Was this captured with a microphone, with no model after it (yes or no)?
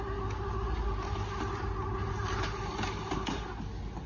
yes